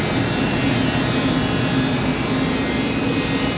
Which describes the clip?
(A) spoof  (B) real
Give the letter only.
B